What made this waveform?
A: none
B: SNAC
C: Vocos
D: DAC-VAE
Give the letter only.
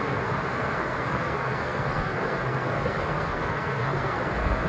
B